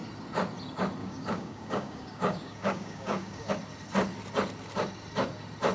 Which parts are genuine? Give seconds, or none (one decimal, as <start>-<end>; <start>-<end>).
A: 0.0-1.0; 3.5-5.7